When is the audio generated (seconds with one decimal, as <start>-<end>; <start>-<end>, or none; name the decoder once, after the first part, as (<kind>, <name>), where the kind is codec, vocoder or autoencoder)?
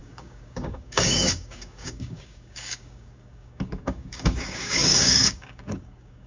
0.0-6.3 (codec, DAC)